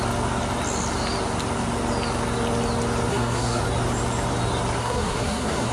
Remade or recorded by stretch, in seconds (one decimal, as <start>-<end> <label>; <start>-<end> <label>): 0.0-3.1 recorded; 3.1-3.6 remade; 3.6-4.8 recorded; 4.8-5.7 remade